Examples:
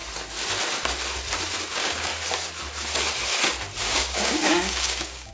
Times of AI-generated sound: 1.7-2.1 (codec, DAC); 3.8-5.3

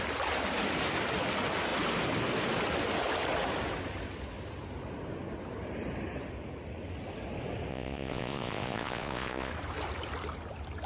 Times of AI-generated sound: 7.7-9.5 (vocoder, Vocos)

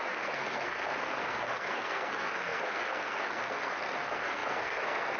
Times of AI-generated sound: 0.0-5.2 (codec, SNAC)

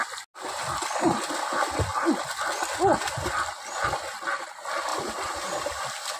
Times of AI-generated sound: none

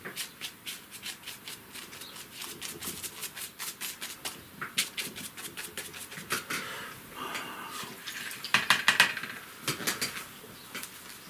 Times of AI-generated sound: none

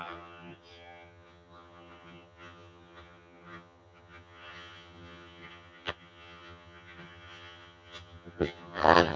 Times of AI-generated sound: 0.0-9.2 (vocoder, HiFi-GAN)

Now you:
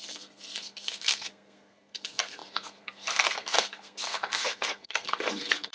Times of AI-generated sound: 0.0-5.7 (codec, SNAC)